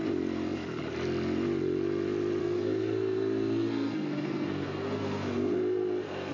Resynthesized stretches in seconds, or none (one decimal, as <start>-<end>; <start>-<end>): 2.4-6.3